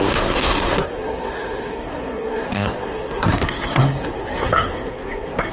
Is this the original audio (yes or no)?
no